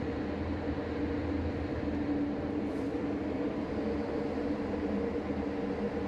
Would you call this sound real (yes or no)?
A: yes